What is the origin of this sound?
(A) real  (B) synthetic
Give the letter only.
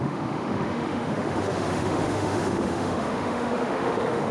B